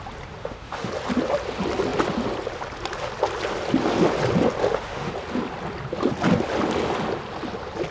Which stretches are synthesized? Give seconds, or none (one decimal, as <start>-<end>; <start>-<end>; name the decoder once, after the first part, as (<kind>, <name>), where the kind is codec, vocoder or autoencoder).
0.4-0.9 (autoencoder, DAC-VAE); 4.6-5.1